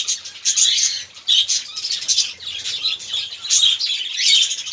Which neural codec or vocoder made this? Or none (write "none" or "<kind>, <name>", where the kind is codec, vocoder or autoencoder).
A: none